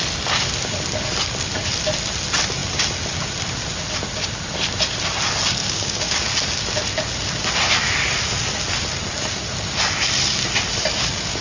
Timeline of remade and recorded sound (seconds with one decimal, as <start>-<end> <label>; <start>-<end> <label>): 0.0-5.6 recorded; 5.6-6.3 remade; 6.3-11.4 recorded